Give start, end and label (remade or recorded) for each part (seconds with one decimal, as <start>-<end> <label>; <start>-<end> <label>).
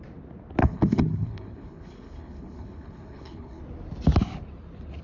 0.0-0.6 recorded; 0.6-3.6 remade; 3.6-5.0 recorded